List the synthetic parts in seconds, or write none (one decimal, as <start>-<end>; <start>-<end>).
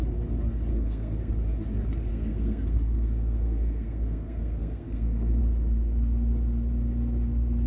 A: 0.7-1.3; 2.1-5.4